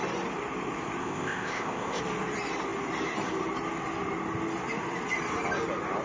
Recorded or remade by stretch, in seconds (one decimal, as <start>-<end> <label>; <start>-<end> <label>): 0.0-1.0 recorded; 1.0-2.0 remade; 2.0-6.0 recorded